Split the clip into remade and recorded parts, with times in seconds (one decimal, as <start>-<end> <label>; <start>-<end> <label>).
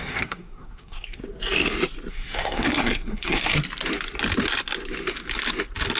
0.0-1.2 remade; 1.2-2.1 recorded; 2.1-3.4 remade; 3.4-6.0 recorded